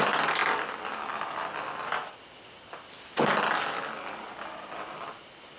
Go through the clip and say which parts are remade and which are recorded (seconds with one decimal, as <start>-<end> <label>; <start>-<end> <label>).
0.0-5.6 recorded